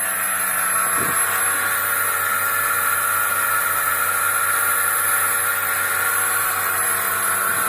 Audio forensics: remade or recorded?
recorded